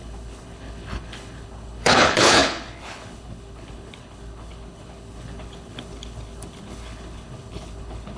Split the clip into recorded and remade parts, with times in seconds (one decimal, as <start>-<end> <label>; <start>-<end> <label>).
0.0-8.2 remade